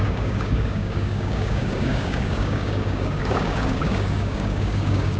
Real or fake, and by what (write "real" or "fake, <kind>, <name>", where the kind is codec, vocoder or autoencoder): fake, codec, DAC